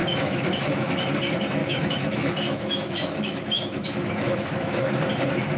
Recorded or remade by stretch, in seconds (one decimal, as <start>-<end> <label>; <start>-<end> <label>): 0.0-0.9 remade; 0.9-1.6 recorded; 1.6-5.0 remade; 5.0-5.6 recorded